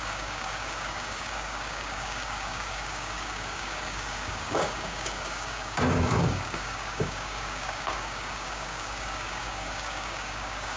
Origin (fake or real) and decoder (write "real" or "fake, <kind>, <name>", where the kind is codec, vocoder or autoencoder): fake, codec, DAC